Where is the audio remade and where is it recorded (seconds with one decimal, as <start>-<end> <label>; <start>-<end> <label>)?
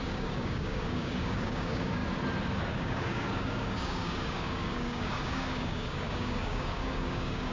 0.0-2.0 remade; 2.0-2.7 recorded; 2.7-7.5 remade